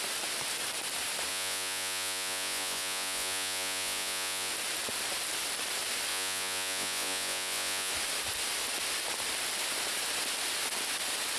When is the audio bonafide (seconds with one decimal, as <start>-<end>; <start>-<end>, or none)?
0.0-1.3; 4.5-6.1; 7.9-11.4